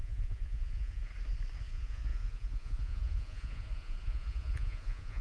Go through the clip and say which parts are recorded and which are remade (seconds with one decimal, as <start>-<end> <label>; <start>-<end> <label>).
0.0-1.1 remade; 1.1-1.6 recorded; 1.6-5.2 remade